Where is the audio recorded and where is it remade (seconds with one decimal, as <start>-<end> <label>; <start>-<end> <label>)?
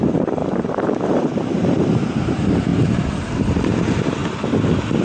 0.0-4.2 remade; 4.2-5.0 recorded